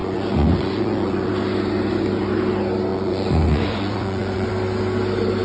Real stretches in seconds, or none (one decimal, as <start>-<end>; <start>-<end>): 1.3-2.9; 4.5-5.4